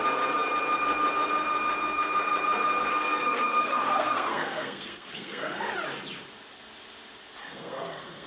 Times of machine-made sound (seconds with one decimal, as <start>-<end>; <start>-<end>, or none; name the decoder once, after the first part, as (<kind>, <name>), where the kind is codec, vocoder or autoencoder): 2.9-5.7 (codec, SNAC); 7.4-8.3

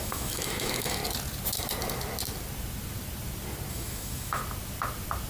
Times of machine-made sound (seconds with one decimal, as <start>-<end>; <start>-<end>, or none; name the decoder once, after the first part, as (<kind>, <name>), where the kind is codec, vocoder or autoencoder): 0.0-1.0 (autoencoder, DAC-VAE); 3.7-4.4

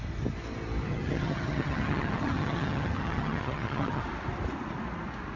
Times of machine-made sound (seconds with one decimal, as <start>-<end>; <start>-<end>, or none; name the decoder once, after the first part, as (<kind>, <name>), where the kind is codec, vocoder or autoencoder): 0.9-4.0 (vocoder, HiFi-GAN)

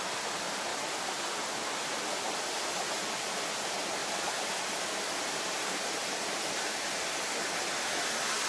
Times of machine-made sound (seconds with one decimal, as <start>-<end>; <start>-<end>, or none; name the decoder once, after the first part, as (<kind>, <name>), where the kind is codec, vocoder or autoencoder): 0.7-1.5 (vocoder, BigVGAN v2); 4.0-6.9

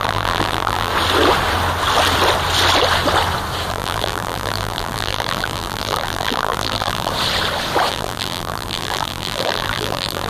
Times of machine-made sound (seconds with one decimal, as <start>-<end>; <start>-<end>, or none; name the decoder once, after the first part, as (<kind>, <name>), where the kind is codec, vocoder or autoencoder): 0.0-0.9 (vocoder, BigVGAN v2); 3.7-7.1; 7.9-10.3

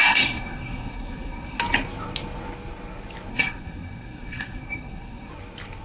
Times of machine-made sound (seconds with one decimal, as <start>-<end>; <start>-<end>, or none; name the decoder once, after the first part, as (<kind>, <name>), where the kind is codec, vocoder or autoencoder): 0.0-1.6 (codec, SNAC); 3.3-5.3

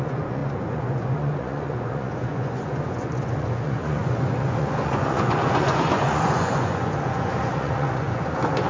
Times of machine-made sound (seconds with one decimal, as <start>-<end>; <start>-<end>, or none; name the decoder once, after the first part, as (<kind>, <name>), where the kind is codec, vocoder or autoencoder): 0.0-8.7 (vocoder, Vocos)

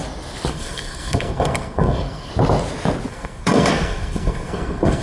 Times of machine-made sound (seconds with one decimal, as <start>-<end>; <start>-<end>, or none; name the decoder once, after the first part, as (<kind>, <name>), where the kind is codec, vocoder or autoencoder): 0.5-2.3 (codec, SNAC); 3.1-5.0